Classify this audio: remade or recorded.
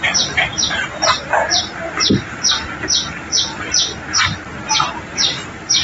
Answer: recorded